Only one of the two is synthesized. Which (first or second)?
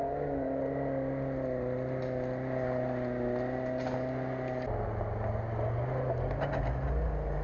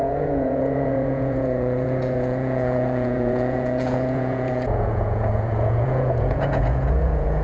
second